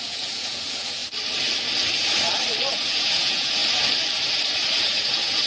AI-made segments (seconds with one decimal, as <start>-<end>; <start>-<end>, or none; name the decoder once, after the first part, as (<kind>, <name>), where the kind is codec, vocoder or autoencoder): 0.0-1.0 (vocoder, Vocos); 2.7-3.6; 4.8-5.5